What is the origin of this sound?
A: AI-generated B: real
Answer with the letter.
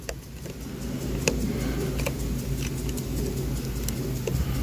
B